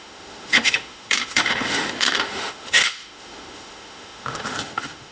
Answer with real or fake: fake